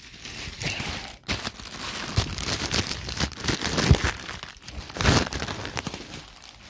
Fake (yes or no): yes